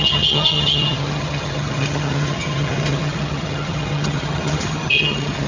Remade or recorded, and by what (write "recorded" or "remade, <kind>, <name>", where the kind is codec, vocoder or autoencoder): remade, vocoder, HiFi-GAN